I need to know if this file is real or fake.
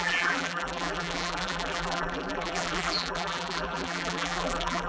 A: fake